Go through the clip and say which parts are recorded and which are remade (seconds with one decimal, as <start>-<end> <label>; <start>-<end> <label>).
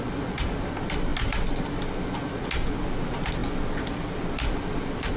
0.0-5.2 recorded